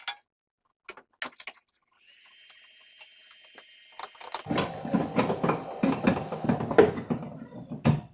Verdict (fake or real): real